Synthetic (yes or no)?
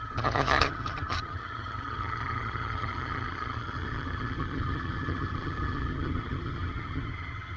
yes